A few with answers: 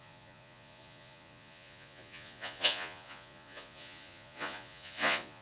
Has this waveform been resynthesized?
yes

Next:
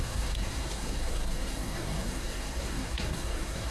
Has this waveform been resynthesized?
yes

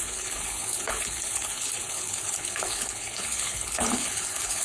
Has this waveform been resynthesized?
yes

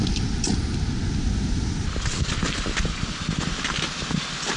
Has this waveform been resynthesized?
no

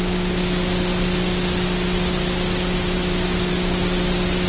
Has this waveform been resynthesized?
no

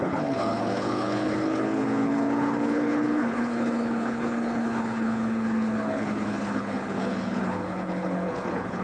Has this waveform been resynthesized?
yes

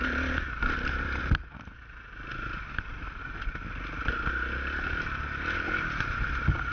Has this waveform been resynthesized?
no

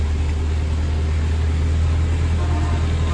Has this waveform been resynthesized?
no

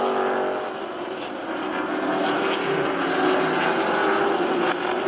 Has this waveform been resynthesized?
no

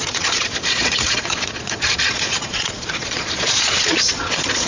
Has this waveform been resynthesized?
yes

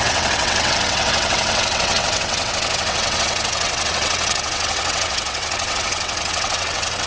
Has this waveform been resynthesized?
yes